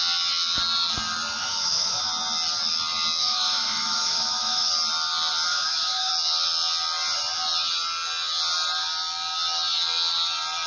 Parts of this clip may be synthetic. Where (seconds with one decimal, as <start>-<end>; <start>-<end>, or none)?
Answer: 1.4-2.1; 3.2-4.7; 5.5-6.1